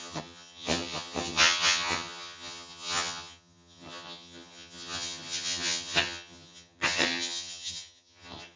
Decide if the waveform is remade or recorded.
remade